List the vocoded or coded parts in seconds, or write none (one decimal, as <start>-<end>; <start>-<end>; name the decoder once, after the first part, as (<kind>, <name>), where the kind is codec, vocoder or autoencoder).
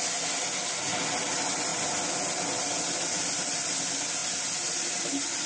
none